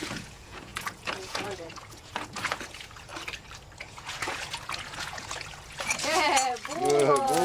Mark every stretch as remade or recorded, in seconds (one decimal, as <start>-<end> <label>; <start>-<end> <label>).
0.0-3.1 remade; 3.1-3.8 recorded; 3.8-7.4 remade